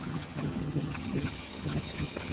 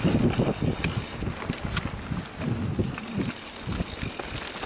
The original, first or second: second